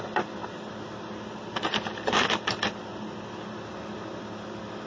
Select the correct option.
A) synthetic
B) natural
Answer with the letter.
B